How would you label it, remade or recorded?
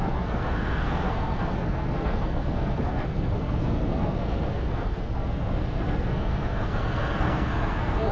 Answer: remade